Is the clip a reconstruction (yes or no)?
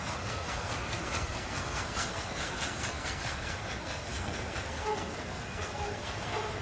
yes